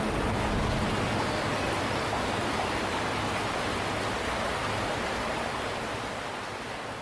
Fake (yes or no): no